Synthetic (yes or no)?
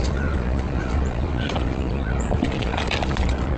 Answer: yes